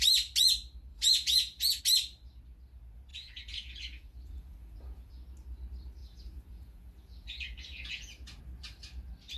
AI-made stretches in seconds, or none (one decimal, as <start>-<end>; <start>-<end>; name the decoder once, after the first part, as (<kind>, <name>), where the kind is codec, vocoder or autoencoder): 0.9-1.8 (vocoder, Vocos); 3.1-5.1; 6.0-8.4